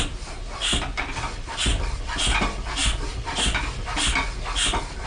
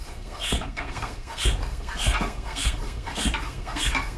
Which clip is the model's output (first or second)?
second